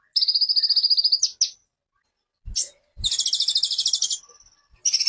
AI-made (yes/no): no